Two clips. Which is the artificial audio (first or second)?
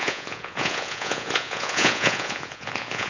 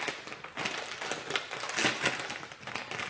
first